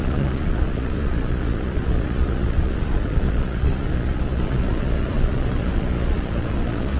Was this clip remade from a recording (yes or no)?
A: yes